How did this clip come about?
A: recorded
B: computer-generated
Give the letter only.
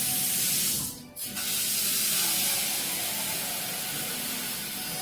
A